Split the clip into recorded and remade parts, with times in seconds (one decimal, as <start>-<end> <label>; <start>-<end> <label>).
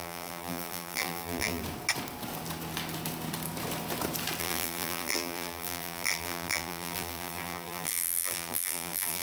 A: 0.0-1.6 remade; 1.6-4.4 recorded; 4.4-9.2 remade